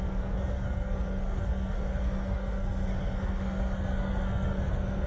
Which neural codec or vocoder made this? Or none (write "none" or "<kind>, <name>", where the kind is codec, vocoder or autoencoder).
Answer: codec, SNAC